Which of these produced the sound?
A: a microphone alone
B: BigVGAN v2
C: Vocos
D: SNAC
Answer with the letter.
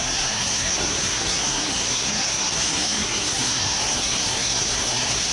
D